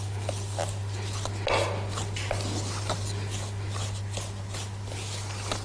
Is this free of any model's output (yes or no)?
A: yes